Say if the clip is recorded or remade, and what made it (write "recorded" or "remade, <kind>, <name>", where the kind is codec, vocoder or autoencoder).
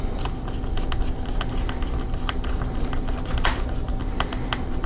recorded